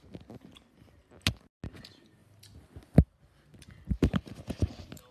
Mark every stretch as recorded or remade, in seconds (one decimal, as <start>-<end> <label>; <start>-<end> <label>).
0.0-5.1 recorded